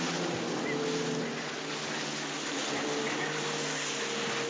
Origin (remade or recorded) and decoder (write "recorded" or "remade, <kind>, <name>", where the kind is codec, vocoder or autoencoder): recorded